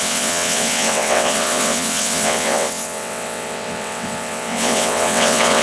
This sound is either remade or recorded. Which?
remade